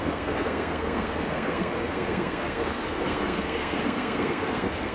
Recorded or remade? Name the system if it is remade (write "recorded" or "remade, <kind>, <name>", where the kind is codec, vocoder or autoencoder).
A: remade, codec, SNAC